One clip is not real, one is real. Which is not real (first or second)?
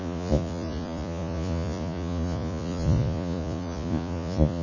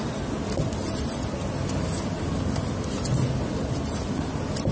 first